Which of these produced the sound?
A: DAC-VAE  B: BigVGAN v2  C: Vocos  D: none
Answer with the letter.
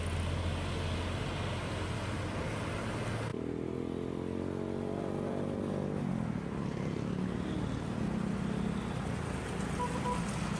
D